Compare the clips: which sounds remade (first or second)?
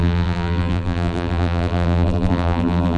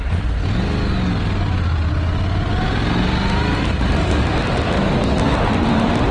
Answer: first